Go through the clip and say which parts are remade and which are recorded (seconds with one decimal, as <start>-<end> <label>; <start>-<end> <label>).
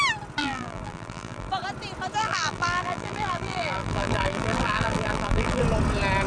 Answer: 0.0-0.4 recorded; 0.4-1.5 remade; 1.5-2.2 recorded; 2.2-5.6 remade; 5.6-6.3 recorded